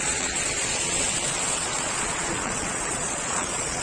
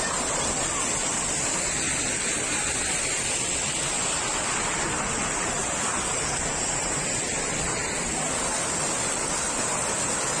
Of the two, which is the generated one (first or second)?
first